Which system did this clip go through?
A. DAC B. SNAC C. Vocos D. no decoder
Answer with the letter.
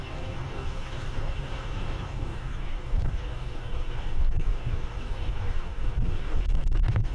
A